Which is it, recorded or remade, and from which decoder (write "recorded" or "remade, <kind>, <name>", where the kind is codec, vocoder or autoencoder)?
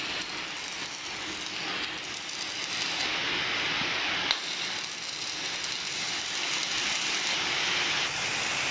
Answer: recorded